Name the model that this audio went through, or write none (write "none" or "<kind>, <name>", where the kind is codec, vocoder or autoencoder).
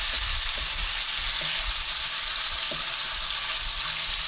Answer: none